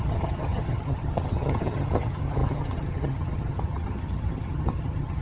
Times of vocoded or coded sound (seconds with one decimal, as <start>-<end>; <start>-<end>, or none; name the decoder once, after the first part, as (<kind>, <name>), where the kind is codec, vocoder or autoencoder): 0.0-5.2 (vocoder, HiFi-GAN)